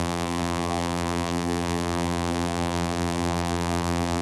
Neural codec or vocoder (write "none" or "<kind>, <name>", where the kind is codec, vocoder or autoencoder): vocoder, BigVGAN v2